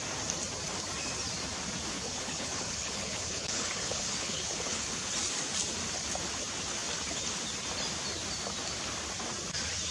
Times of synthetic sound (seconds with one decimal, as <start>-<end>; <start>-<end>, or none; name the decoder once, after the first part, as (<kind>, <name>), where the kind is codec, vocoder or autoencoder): 1.9-5.1 (codec, HILCodec)

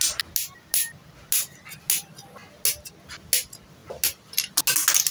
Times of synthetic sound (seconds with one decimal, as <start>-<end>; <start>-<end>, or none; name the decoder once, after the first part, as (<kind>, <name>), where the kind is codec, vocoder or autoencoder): none

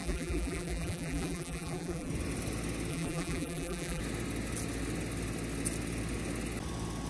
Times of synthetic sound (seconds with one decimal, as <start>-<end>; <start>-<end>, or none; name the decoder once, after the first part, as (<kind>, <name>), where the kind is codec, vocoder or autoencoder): 0.0-2.1 (vocoder, BigVGAN v2); 2.9-4.0

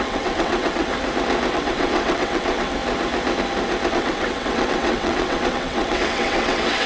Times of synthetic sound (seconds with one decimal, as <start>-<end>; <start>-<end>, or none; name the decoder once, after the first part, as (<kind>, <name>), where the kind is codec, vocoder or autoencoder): 0.0-0.9 (vocoder, WaveNeXt); 1.5-2.8; 3.9-6.9